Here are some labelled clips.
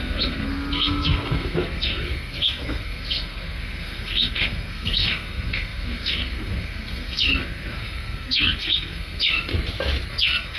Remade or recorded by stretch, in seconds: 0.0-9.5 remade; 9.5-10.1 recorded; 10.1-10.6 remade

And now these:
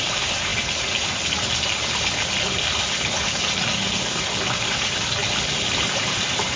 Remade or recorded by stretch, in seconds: 0.0-0.5 remade; 0.5-4.5 recorded; 4.5-5.2 remade; 5.2-5.8 recorded; 5.8-6.6 remade

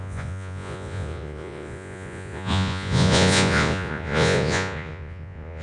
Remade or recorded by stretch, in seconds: 0.0-5.6 remade

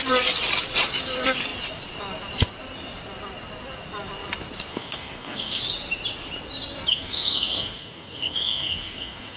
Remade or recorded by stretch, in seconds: 0.0-4.7 recorded; 4.7-5.6 remade; 5.6-6.9 recorded; 6.9-9.4 remade